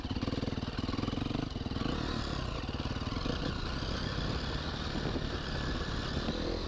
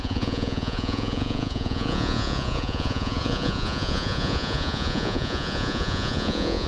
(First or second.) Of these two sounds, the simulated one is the second